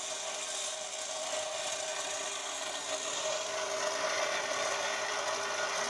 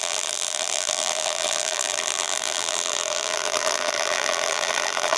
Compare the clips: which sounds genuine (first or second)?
first